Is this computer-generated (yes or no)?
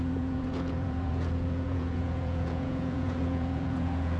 yes